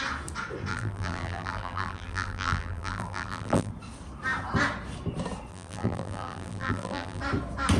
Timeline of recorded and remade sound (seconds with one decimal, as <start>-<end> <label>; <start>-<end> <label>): 0.0-0.7 recorded; 0.7-3.7 remade; 3.7-5.5 recorded; 5.5-7.2 remade; 7.2-7.8 recorded